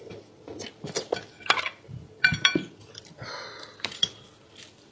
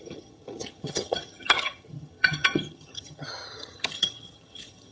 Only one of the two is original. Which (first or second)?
first